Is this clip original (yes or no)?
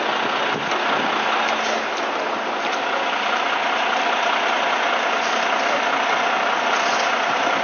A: yes